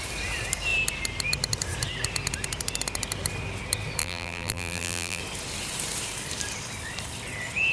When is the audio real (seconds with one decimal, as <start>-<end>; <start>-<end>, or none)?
0.0-4.0; 5.2-7.7